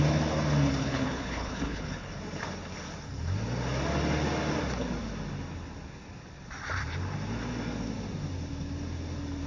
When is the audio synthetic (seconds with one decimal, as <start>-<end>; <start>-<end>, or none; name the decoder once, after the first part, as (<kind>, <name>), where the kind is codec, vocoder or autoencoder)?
0.8-2.2 (codec, HILCodec)

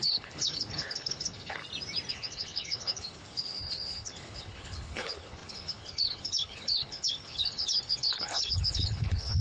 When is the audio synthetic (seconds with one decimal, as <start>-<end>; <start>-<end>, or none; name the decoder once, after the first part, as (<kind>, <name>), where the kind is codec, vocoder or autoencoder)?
0.0-1.6 (codec, HILCodec); 2.1-9.4

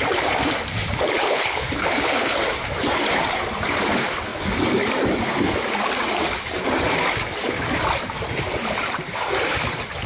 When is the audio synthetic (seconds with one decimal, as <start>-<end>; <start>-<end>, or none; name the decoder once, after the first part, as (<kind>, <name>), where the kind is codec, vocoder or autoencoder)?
1.2-2.4 (codec, HILCodec)

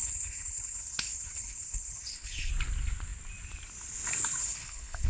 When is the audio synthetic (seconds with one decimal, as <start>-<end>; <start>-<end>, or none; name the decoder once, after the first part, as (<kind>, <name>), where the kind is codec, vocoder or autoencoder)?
0.0-2.5 (codec, HILCodec); 4.4-5.1

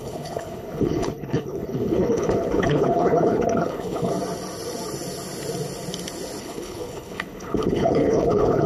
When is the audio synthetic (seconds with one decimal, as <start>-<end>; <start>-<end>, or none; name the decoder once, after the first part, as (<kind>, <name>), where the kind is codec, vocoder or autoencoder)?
0.0-4.1 (codec, HILCodec); 6.4-8.7